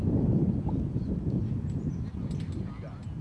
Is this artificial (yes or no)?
no